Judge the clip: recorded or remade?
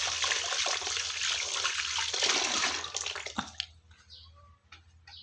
recorded